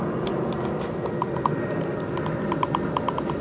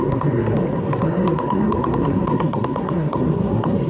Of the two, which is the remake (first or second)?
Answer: second